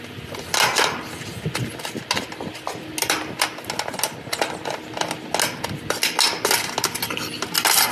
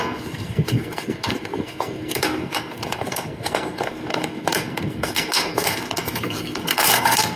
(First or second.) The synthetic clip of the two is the second